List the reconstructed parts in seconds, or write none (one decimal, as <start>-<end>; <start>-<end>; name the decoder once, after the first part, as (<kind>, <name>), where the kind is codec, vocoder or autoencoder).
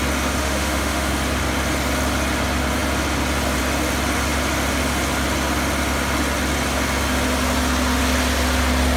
0.4-1.1 (autoencoder, DAC-VAE)